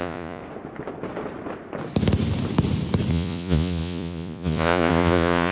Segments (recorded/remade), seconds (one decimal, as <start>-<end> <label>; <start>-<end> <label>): 0.0-0.4 remade; 0.4-3.1 recorded; 3.1-5.5 remade

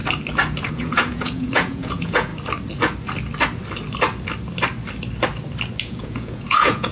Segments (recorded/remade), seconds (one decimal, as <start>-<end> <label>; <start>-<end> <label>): 0.0-0.7 recorded; 0.7-2.3 remade; 2.3-5.8 recorded; 5.8-6.9 remade

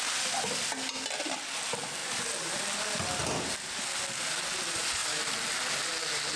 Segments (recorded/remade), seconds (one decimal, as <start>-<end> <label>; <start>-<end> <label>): 0.0-6.4 recorded

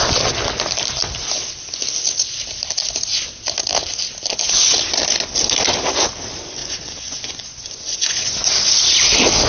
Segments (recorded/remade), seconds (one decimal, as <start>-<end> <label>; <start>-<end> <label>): 0.0-6.6 recorded; 6.6-8.4 remade; 8.4-9.5 recorded

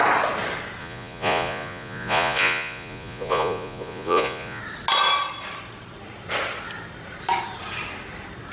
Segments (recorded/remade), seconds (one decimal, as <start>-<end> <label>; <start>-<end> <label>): 0.0-0.8 recorded; 0.8-4.6 remade; 4.6-8.5 recorded

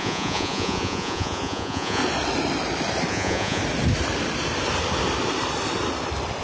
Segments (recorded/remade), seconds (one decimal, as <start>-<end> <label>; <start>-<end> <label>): 0.0-2.0 remade; 2.0-3.1 recorded; 3.1-3.6 remade; 3.6-6.4 recorded

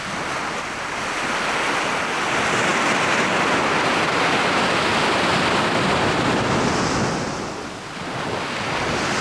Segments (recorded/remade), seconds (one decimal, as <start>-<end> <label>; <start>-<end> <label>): 0.0-9.2 recorded